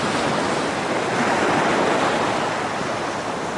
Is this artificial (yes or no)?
no